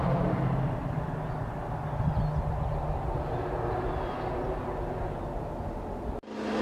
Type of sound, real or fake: real